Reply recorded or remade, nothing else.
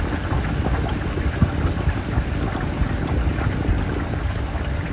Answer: recorded